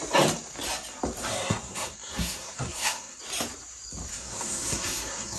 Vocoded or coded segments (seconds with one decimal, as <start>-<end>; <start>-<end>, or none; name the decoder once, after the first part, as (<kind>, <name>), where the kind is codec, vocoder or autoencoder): 1.2-3.2 (codec, SNAC); 4.1-5.4